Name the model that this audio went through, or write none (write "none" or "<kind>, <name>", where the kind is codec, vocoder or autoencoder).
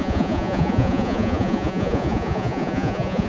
vocoder, Vocos